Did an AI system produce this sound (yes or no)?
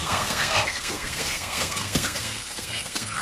yes